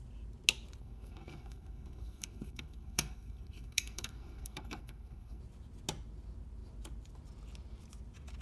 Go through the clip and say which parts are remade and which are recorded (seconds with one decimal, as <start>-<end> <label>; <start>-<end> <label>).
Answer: 0.0-0.8 recorded; 0.8-5.4 remade; 5.4-8.4 recorded